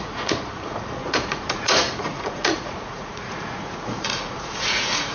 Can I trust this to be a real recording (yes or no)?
no